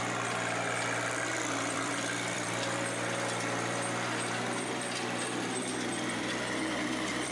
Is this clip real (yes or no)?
no